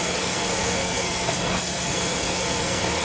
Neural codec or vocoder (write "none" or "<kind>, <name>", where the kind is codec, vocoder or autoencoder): codec, SNAC